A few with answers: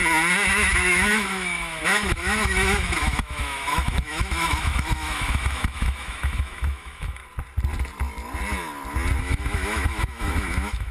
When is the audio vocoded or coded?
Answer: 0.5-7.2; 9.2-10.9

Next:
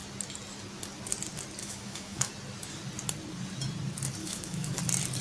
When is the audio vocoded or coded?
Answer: 1.6-2.3; 4.2-4.8